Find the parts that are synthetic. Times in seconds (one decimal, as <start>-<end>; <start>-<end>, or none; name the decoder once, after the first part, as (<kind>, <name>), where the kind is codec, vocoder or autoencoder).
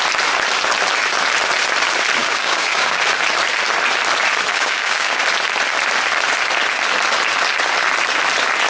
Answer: 2.2-3.0 (codec, DAC); 4.5-5.2